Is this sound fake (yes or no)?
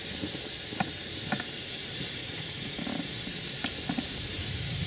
yes